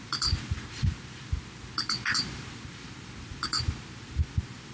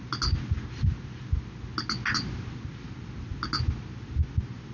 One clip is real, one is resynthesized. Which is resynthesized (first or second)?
first